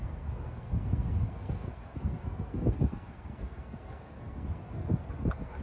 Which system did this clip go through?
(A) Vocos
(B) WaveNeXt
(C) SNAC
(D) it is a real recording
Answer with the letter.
C